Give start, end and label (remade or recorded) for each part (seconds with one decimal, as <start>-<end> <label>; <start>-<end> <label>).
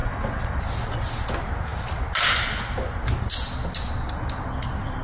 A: 0.0-0.6 remade; 0.6-5.0 recorded